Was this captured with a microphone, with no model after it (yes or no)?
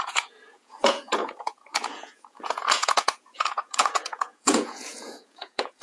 no